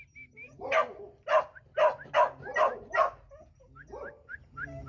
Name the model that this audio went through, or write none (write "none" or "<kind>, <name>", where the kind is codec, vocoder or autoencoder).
none